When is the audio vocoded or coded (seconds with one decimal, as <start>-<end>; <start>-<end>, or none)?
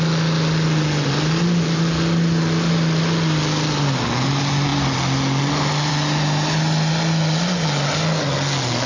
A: none